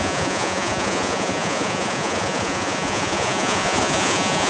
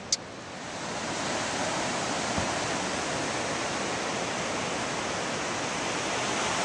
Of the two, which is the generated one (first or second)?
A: first